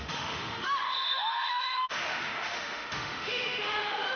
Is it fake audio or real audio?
fake